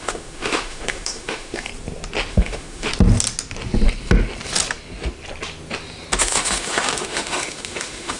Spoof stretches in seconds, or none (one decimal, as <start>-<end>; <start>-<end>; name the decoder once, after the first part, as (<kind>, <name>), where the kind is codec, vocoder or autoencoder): 0.0-1.7 (autoencoder, DAC-VAE); 2.3-2.9; 6.2-8.2